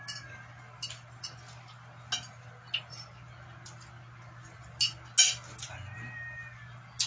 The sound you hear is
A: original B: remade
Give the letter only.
A